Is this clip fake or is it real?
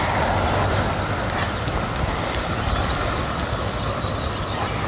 real